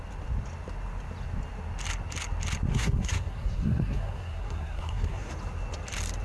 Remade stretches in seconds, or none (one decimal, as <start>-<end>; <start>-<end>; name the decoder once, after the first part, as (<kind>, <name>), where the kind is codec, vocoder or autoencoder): 2.7-5.3 (codec, SNAC)